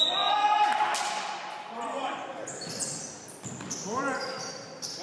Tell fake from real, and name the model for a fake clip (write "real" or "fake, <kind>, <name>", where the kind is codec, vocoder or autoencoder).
fake, vocoder, BigVGAN v2